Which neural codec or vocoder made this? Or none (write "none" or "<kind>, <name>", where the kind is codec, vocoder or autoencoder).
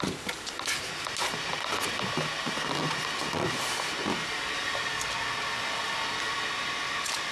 none